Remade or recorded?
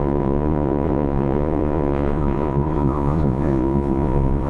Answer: remade